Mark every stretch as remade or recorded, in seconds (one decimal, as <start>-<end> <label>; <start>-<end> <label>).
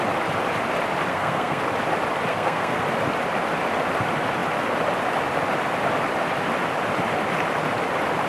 0.0-1.1 recorded; 1.1-1.6 remade; 1.6-2.3 recorded; 2.3-2.8 remade; 2.8-8.3 recorded